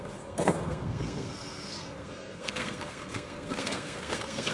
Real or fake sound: fake